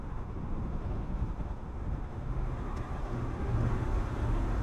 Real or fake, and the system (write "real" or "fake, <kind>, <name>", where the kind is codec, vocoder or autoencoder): fake, autoencoder, DAC-VAE